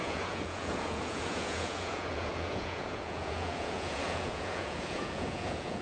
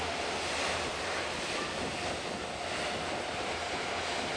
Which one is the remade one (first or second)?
first